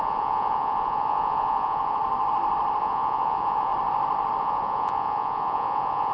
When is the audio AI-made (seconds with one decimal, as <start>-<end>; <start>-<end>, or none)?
0.0-2.0; 2.8-3.7; 4.4-6.1